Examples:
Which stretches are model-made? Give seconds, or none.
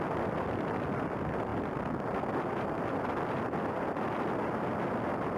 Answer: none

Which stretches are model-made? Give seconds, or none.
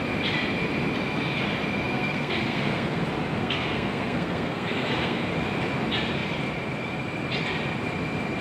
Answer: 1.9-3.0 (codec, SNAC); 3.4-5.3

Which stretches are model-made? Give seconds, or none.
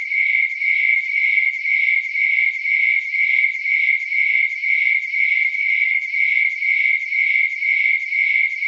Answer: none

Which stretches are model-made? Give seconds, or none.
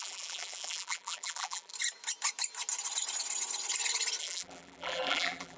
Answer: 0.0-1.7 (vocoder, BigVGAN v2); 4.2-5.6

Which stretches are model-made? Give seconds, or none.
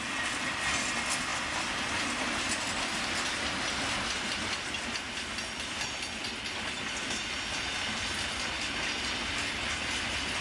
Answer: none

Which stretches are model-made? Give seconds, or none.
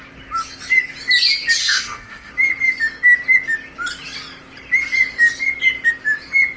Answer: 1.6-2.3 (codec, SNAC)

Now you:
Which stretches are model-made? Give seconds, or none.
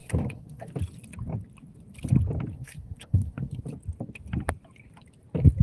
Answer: 0.0-0.7 (codec, SNAC); 2.5-3.6